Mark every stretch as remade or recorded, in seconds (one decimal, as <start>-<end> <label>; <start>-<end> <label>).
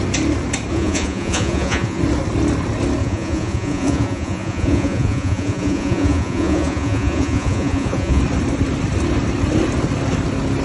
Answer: 0.0-0.7 recorded; 0.7-2.0 remade; 2.0-3.0 recorded; 3.0-8.2 remade; 8.2-10.6 recorded